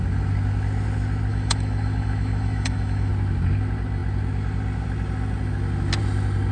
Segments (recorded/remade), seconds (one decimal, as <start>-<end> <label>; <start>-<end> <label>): 0.0-1.3 recorded; 1.3-3.1 remade; 3.1-6.5 recorded